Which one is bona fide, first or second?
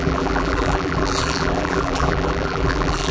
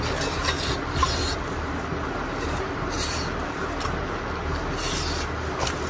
second